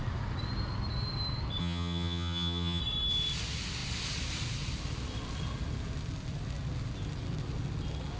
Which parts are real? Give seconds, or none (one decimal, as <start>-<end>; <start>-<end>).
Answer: 0.0-1.6; 2.8-8.2